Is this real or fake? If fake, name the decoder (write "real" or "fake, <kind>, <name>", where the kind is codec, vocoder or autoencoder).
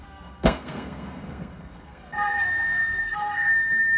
fake, codec, SNAC